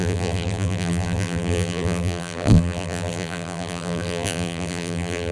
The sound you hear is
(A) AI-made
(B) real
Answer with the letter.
A